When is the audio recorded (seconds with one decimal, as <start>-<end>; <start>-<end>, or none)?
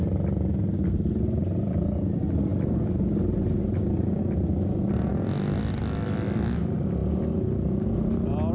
0.0-2.5; 3.8-8.5